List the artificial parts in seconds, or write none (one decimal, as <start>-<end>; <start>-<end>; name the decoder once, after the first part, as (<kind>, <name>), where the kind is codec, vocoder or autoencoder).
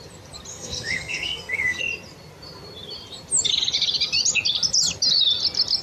0.5-1.8 (codec, SNAC)